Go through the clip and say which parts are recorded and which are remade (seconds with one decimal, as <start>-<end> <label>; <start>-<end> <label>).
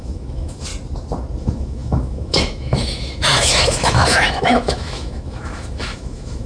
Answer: 0.0-0.7 remade; 0.7-1.4 recorded; 1.4-6.5 remade